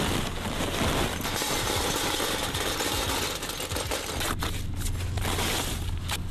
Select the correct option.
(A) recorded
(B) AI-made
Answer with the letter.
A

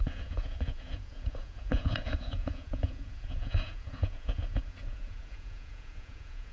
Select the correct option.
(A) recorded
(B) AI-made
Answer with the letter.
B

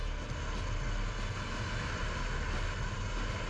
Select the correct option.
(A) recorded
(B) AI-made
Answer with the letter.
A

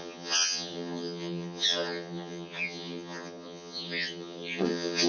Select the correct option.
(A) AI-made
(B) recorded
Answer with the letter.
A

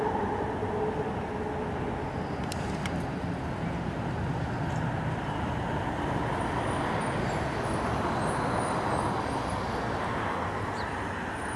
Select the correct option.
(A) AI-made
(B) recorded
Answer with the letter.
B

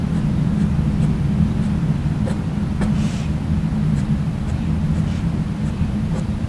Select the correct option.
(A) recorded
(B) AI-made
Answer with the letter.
A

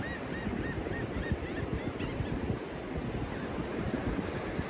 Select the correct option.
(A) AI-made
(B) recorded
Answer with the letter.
B